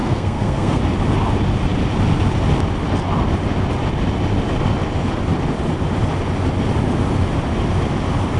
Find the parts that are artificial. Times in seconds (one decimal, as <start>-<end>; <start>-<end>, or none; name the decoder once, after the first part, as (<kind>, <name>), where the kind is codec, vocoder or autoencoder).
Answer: 0.0-0.8 (codec, SNAC)